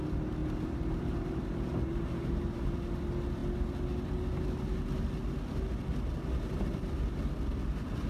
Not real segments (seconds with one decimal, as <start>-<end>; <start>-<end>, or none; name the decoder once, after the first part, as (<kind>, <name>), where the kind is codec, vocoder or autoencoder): 0.4-2.8 (vocoder, BigVGAN v2)